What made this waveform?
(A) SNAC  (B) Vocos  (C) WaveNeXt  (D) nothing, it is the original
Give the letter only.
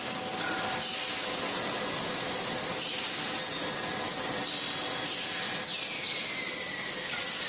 D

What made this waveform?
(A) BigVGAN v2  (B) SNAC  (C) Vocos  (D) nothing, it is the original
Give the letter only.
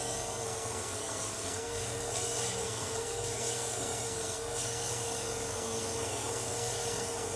B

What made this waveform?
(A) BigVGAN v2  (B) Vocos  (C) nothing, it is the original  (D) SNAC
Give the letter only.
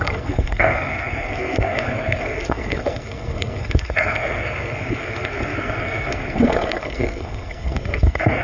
D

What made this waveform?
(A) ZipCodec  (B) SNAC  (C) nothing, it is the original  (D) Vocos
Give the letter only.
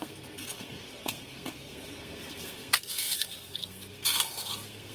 B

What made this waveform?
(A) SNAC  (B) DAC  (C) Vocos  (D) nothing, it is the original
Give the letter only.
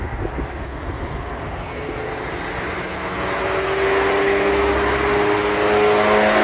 D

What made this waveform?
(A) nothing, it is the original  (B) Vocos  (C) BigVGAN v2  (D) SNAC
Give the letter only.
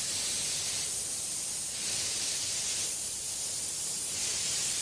A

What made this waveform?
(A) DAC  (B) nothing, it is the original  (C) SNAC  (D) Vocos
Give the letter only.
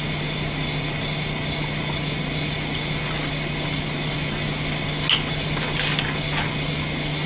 B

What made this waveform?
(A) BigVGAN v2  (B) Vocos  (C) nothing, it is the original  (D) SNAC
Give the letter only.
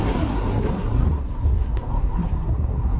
D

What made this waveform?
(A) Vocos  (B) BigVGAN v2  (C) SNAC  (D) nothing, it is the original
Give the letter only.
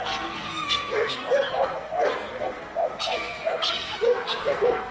C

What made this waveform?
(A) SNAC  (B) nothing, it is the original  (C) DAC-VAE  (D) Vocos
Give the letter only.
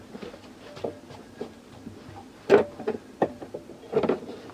B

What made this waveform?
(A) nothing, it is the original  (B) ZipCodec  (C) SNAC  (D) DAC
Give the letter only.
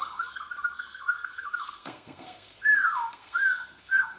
C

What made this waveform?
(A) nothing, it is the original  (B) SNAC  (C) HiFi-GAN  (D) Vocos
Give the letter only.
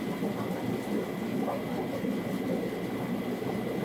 A